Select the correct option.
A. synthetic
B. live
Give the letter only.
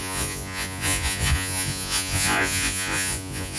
A